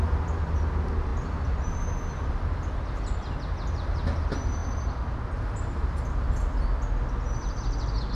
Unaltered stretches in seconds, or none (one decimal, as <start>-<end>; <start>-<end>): 0.0-8.1